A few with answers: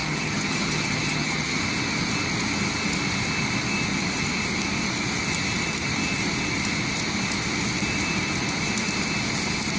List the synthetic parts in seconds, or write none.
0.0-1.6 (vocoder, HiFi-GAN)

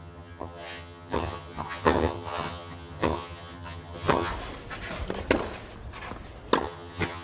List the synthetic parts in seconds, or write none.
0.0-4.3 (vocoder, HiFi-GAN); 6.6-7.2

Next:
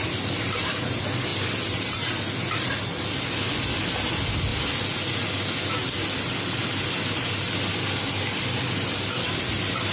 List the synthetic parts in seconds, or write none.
none

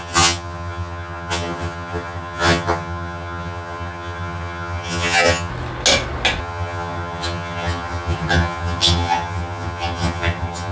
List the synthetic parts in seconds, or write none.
0.0-5.5 (vocoder, HiFi-GAN); 6.4-10.7

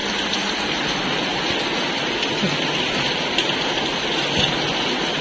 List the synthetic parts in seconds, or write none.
none

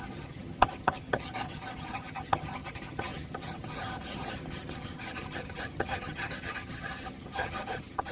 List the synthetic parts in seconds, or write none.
0.0-8.1 (vocoder, HiFi-GAN)

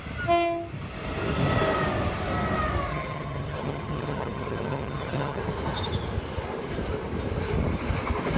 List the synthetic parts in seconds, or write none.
2.9-5.4 (vocoder, HiFi-GAN)